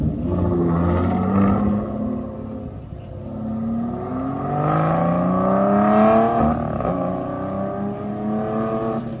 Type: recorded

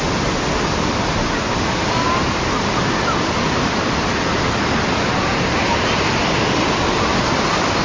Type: recorded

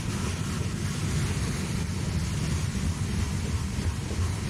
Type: recorded